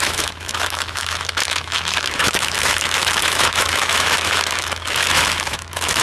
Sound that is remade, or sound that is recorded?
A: remade